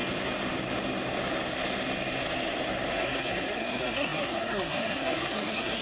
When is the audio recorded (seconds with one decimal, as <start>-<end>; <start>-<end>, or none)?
0.0-2.9